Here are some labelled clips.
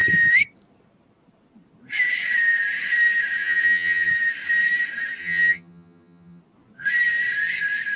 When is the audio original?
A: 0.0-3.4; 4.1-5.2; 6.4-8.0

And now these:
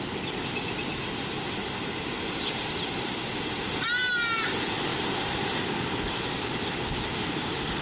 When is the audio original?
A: 0.0-7.8